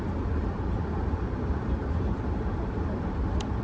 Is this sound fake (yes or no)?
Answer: yes